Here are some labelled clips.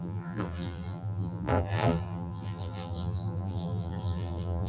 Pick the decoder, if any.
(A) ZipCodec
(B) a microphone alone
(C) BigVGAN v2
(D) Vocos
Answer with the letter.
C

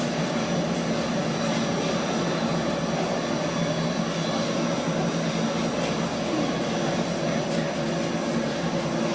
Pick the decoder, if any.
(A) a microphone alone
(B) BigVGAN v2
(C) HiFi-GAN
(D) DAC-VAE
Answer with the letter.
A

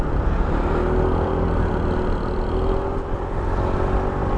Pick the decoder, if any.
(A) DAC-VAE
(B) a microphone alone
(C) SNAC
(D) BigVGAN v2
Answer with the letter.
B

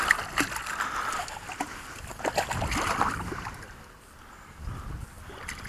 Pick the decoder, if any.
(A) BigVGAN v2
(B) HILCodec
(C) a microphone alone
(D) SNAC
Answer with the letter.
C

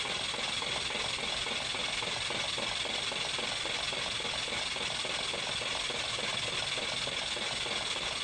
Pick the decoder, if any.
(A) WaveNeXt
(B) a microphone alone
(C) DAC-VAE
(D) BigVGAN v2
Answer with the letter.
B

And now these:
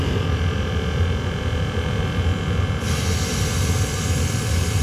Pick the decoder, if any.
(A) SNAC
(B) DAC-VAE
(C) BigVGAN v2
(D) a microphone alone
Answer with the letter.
D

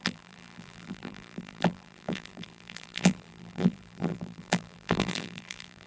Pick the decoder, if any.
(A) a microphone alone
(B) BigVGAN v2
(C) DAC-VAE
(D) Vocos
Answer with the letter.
B